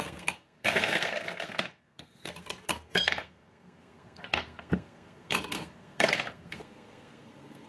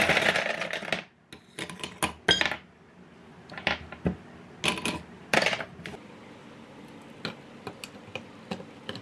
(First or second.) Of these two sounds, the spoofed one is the first